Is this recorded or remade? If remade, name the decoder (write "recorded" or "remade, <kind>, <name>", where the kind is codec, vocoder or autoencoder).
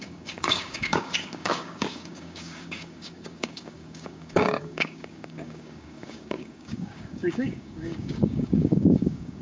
remade, codec, DAC